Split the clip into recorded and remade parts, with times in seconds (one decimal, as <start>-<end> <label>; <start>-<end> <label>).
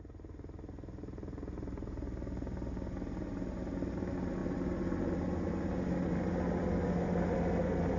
0.0-8.0 recorded